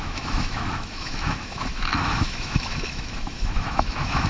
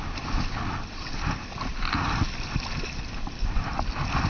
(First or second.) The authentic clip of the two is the second